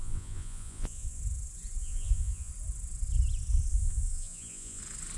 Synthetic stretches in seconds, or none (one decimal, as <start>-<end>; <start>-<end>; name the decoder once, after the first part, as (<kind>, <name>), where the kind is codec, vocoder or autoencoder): 0.0-1.2 (vocoder, Vocos); 1.8-2.5; 3.7-4.8